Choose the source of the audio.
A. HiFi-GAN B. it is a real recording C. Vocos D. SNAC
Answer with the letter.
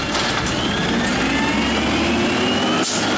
B